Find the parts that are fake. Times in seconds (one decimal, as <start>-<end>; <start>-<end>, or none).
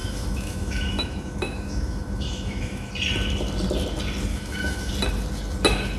0.0-2.9; 4.3-4.9